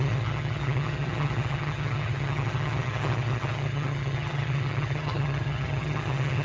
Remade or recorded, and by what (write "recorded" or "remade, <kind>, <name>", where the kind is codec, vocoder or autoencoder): remade, vocoder, HiFi-GAN